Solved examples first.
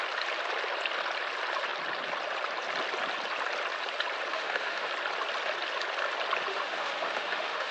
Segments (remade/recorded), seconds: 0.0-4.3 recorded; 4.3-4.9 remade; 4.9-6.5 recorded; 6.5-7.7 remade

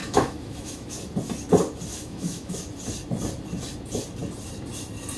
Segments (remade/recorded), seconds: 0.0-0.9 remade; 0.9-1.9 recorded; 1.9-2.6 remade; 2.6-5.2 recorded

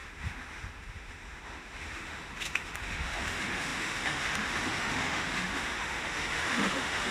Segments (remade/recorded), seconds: 0.0-7.1 remade